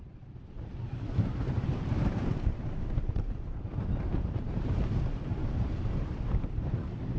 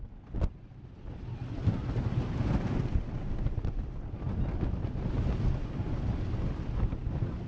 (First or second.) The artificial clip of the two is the first